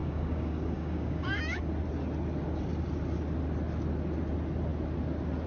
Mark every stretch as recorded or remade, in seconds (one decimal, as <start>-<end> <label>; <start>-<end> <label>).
0.0-1.6 remade; 1.6-5.5 recorded